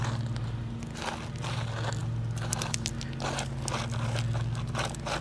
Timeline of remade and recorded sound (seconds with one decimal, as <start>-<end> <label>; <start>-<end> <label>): 0.0-5.2 recorded